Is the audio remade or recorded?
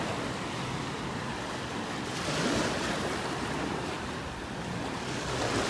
recorded